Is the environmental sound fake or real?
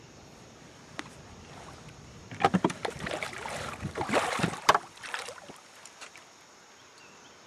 real